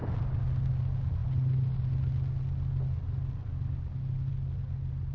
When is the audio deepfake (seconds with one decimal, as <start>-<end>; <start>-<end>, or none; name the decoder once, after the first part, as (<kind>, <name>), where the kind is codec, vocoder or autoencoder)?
none